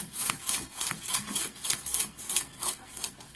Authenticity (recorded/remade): remade